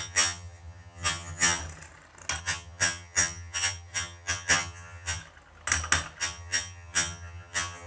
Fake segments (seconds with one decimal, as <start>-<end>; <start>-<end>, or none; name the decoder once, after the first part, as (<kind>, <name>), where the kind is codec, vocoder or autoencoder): 0.0-1.6 (vocoder, HiFi-GAN); 2.4-5.2; 6.2-7.9